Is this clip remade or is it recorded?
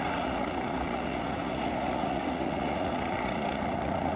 remade